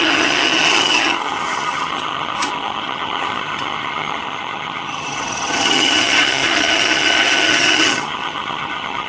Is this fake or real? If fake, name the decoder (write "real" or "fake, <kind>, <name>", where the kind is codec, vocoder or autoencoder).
fake, vocoder, HiFi-GAN